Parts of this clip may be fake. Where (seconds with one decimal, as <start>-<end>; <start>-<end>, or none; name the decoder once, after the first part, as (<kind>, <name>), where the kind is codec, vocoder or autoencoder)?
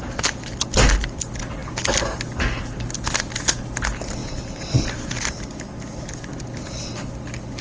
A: none